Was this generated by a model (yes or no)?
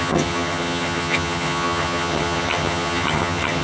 yes